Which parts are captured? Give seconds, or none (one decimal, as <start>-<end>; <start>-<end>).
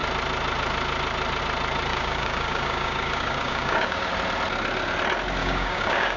0.0-1.9; 4.1-5.4